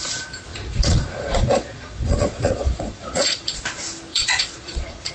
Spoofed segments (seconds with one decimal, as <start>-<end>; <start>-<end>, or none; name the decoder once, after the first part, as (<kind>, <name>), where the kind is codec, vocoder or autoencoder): 0.5-3.6 (vocoder, Vocos); 4.1-5.1